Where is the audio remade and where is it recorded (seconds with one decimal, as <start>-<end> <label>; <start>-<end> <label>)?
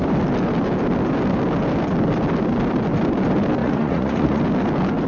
0.0-3.6 recorded; 3.6-4.4 remade; 4.4-5.1 recorded